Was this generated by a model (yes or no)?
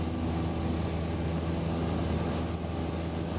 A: no